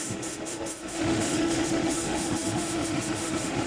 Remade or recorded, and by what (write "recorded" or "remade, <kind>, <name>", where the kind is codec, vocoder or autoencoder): remade, autoencoder, DAC-VAE